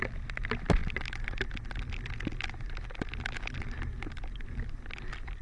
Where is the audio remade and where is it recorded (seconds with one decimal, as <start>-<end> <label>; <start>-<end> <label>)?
0.0-5.4 recorded